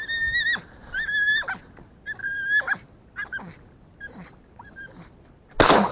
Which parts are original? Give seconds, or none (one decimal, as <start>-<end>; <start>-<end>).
0.0-5.9